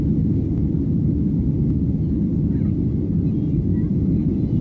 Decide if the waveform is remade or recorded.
recorded